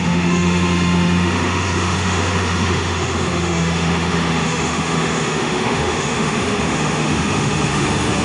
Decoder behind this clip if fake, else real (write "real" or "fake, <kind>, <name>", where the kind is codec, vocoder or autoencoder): fake, autoencoder, DAC-VAE